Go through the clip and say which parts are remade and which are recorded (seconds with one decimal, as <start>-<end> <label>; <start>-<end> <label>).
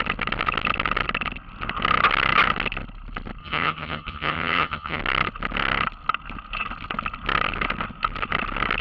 0.0-3.4 recorded; 3.4-5.0 remade; 5.0-8.8 recorded